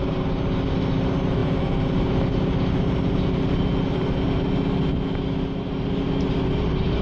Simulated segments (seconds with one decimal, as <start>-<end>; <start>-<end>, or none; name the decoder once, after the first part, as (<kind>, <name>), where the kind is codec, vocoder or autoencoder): none